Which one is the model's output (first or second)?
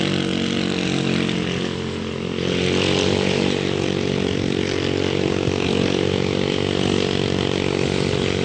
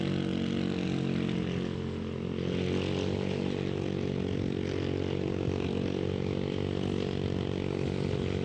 first